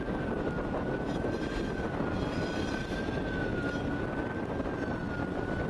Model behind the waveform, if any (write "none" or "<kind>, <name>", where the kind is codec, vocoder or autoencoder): none